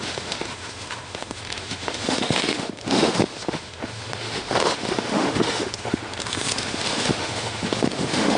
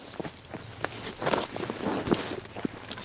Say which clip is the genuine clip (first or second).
second